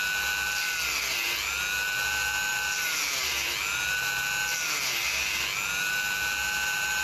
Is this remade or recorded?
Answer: recorded